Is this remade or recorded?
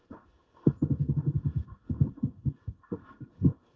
remade